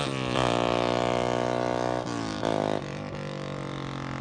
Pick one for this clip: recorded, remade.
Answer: recorded